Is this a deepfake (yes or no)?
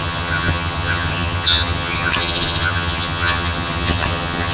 yes